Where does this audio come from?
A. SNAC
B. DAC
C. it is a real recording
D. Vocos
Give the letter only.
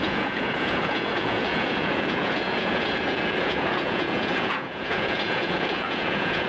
D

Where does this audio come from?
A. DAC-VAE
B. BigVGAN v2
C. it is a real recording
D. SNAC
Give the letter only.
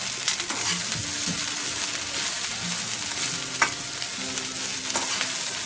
C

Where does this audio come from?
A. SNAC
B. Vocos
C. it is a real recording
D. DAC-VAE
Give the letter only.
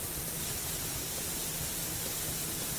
C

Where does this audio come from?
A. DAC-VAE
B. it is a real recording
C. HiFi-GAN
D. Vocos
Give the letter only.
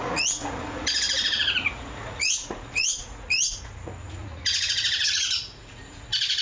D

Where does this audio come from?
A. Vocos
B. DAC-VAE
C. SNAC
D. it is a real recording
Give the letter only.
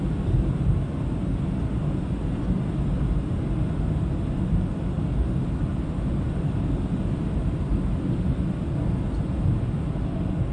D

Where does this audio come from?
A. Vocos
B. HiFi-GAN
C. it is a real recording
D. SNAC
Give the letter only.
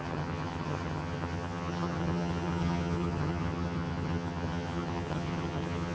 B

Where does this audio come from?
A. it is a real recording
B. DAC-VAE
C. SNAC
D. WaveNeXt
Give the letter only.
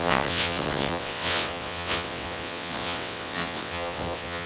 D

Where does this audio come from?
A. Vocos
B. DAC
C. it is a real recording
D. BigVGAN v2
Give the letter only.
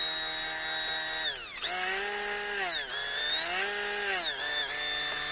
C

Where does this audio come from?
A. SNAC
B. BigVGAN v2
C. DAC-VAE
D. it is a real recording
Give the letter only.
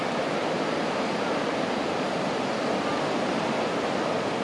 D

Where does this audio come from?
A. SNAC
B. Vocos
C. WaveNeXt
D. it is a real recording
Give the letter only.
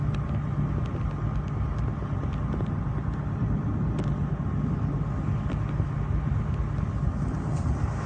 D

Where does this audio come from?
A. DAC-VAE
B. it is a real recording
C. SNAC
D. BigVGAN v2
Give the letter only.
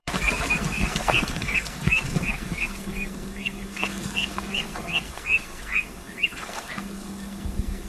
C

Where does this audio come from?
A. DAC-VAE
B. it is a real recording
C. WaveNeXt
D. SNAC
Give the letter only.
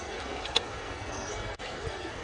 D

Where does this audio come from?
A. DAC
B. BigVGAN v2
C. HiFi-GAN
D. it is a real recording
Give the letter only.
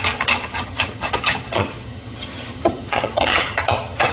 C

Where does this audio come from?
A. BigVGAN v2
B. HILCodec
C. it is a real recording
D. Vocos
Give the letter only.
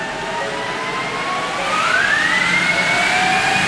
C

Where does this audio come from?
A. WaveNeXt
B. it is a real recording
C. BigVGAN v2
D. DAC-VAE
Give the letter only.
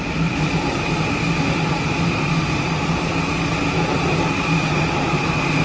B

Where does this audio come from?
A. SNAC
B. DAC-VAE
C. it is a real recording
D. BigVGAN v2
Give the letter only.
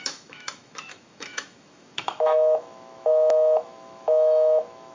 B